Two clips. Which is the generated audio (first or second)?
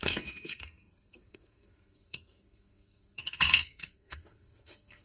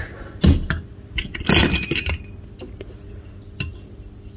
first